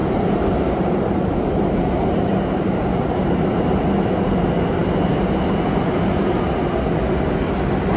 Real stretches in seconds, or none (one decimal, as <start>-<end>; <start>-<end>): 1.1-8.0